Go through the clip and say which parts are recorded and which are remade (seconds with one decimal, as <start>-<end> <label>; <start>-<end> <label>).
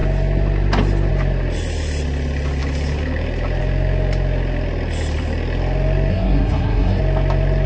0.0-6.1 recorded; 6.1-7.0 remade; 7.0-7.7 recorded